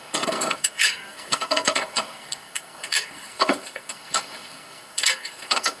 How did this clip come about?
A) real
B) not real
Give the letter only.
B